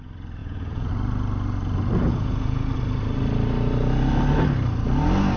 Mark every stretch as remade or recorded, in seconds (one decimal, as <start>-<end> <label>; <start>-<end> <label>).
0.0-0.4 recorded; 0.4-0.9 remade; 0.9-2.0 recorded; 2.0-2.7 remade; 2.7-5.4 recorded